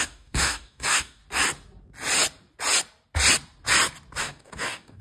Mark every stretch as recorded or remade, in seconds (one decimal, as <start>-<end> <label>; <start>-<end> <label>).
0.0-1.2 remade; 1.2-4.2 recorded; 4.2-5.0 remade